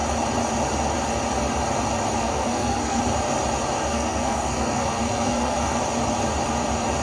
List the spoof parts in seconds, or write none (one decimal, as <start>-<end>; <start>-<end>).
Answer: 2.2-3.0; 3.9-5.8